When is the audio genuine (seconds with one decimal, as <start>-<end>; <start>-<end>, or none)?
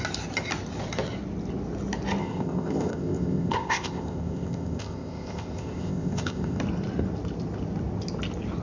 0.0-2.2; 6.6-8.6